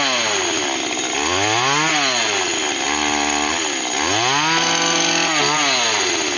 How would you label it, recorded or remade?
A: recorded